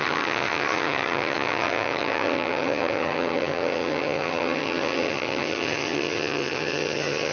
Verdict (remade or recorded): remade